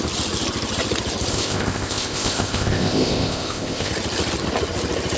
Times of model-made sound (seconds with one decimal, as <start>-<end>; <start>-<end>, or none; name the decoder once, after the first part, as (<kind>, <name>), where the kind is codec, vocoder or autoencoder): 1.3-3.9 (codec, ZipCodec)